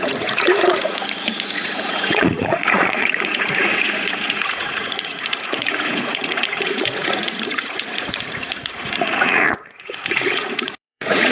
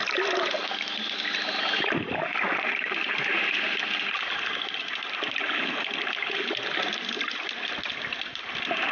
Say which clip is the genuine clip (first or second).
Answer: second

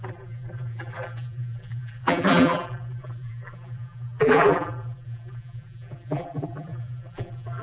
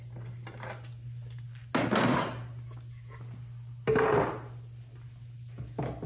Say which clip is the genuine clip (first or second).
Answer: second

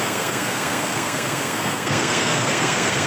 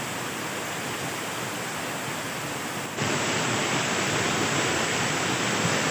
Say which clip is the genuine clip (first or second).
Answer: second